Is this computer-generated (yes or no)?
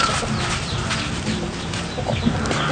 no